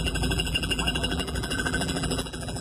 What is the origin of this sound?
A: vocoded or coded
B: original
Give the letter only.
A